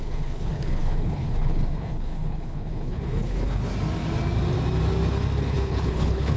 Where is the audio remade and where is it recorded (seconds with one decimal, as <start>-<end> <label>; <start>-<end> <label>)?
0.0-3.7 remade; 3.7-5.4 recorded; 5.4-6.4 remade